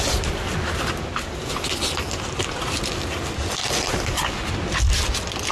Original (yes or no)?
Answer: yes